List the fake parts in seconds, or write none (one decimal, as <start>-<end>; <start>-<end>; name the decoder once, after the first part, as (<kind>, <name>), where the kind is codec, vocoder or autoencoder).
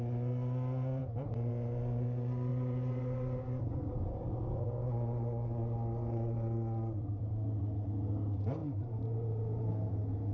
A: 1.0-1.5 (vocoder, BigVGAN v2); 2.5-4.6; 8.6-9.7